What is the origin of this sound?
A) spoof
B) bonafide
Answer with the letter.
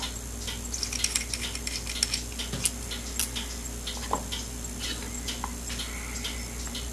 B